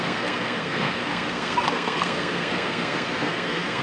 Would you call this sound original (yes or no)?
no